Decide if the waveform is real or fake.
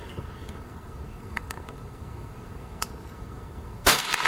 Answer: fake